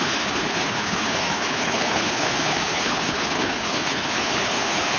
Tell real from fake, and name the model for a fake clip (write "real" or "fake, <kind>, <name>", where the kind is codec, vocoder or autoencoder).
fake, codec, HILCodec